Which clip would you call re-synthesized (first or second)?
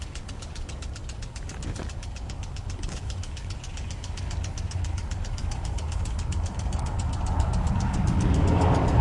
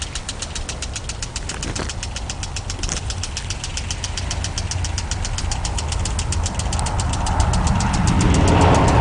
first